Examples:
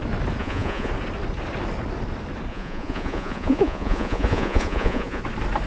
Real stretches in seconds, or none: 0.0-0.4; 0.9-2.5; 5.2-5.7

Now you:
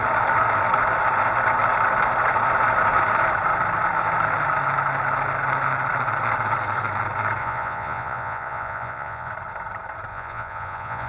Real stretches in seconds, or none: 0.0-7.4; 9.3-10.1

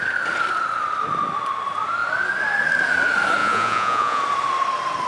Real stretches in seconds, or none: 0.0-3.4; 4.2-5.1